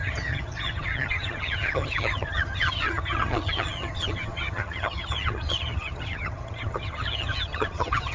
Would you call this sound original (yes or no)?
no